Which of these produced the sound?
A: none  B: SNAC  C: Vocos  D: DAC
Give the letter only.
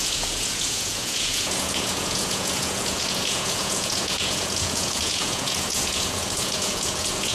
C